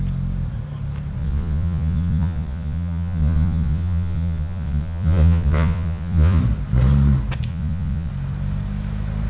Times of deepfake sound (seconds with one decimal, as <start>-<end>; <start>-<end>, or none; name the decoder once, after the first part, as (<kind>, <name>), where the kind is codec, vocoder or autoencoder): 1.2-6.4 (vocoder, Vocos); 7.5-8.1